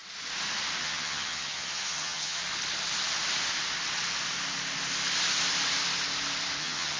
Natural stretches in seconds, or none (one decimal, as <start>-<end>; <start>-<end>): 0.0-0.8; 2.4-6.6